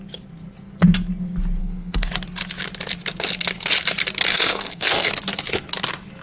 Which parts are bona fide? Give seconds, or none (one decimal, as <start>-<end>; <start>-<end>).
0.0-1.6; 2.1-4.3; 5.1-6.2